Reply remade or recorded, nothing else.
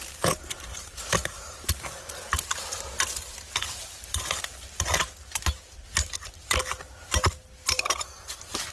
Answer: recorded